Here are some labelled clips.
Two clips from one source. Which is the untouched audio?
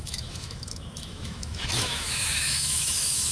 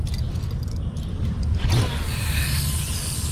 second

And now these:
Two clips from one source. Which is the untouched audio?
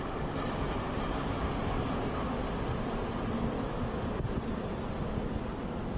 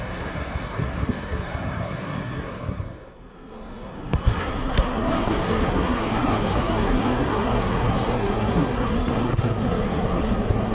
first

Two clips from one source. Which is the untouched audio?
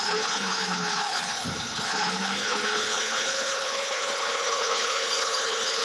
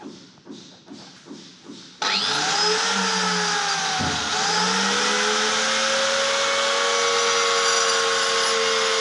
second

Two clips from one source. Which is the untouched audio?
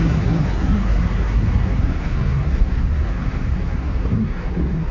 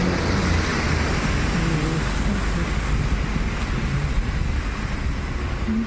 second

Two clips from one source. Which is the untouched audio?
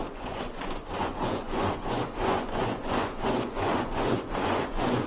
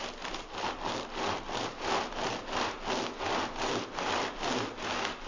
second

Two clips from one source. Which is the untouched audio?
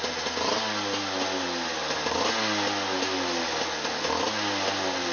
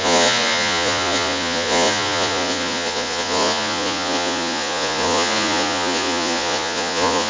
first